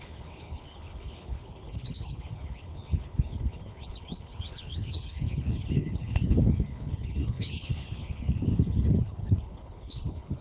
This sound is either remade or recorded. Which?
remade